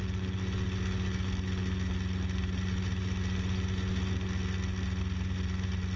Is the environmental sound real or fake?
real